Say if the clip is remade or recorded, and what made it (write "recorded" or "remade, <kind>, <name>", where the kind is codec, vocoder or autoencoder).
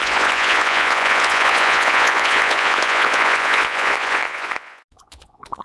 remade, vocoder, Vocos